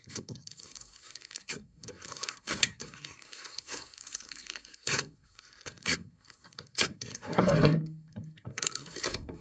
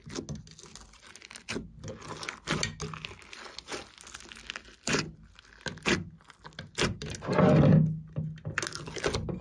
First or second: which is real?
second